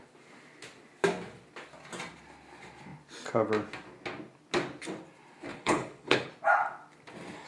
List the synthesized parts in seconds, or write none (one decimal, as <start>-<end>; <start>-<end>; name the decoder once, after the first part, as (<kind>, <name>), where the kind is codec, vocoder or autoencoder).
5.5-6.3 (codec, HILCodec)

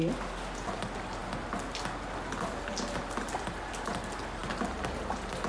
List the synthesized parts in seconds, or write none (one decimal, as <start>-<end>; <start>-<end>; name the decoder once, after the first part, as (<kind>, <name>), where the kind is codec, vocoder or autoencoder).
none

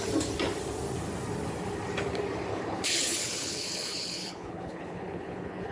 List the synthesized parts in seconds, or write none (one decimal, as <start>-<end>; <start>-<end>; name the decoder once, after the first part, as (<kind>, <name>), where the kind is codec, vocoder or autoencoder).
2.5-5.7 (codec, HILCodec)

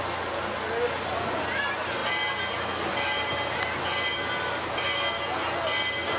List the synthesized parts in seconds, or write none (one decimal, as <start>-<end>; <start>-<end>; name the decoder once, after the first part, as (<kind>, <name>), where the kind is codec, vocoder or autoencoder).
none

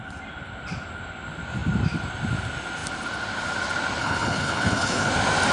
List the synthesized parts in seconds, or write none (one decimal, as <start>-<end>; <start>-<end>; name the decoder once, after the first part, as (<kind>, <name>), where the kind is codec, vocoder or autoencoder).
4.0-5.1 (codec, HILCodec)

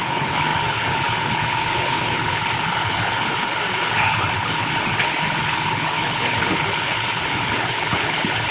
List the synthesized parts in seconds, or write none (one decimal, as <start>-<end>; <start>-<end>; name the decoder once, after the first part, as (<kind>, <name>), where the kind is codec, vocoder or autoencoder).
0.0-8.5 (codec, HILCodec)

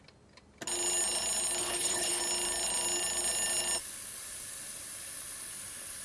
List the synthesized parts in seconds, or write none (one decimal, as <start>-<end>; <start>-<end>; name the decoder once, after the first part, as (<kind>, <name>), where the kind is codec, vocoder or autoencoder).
1.6-2.2 (codec, HILCodec)